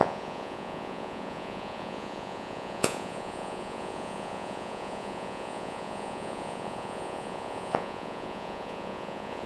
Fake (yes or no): yes